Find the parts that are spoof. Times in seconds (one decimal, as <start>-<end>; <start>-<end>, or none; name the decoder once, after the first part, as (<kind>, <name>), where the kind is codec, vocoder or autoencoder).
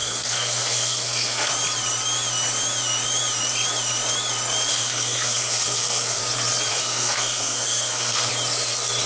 0.0-1.5 (codec, SNAC); 4.7-6.2; 6.7-8.3